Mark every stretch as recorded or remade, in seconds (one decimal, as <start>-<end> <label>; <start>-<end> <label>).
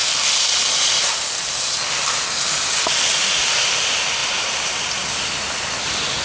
0.0-6.2 recorded